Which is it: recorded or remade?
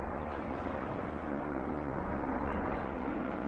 remade